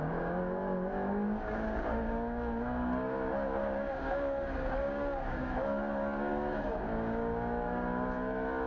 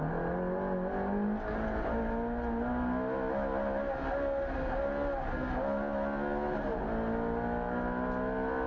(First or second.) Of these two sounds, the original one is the second